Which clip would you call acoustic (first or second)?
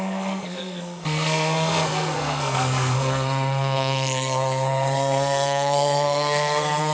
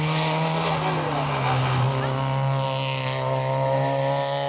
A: second